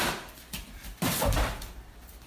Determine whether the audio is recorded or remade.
remade